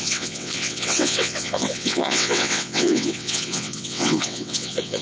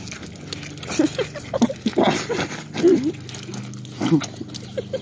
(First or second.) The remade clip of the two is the first